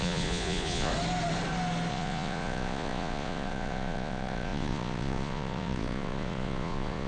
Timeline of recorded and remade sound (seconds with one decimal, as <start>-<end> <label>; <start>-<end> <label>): 0.0-0.9 remade; 0.9-1.9 recorded; 1.9-7.1 remade